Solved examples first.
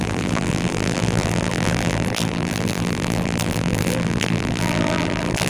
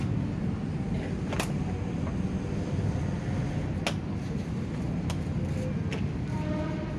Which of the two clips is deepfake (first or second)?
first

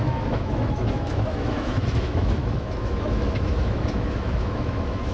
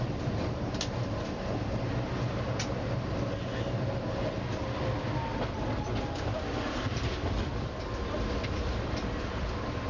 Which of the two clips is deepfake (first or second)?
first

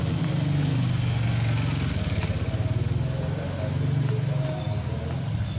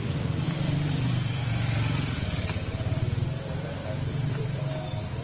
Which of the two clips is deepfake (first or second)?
second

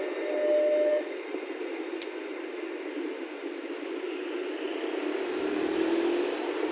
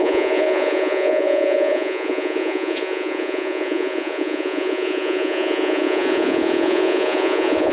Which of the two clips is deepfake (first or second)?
second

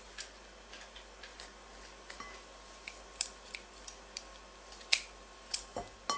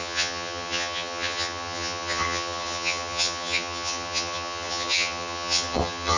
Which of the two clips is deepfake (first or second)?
second